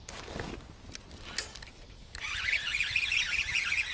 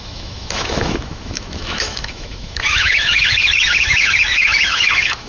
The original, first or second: first